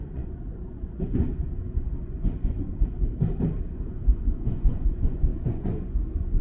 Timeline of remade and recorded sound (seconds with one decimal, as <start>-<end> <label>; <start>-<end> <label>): 0.0-2.7 remade; 2.7-3.7 recorded; 3.7-6.4 remade